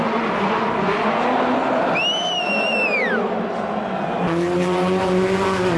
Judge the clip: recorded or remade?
recorded